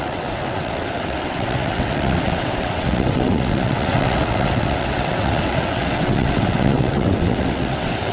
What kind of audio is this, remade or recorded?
remade